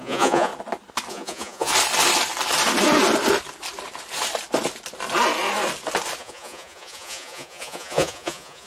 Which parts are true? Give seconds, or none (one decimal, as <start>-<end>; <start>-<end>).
0.5-1.1; 1.7-6.2